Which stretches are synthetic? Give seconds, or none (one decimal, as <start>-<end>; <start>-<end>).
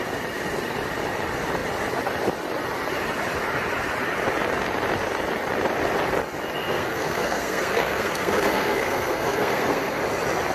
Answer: 6.6-10.0